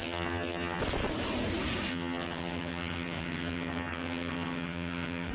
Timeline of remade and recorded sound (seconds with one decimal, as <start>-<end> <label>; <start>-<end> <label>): 0.0-0.8 remade; 0.8-1.9 recorded; 1.9-5.3 remade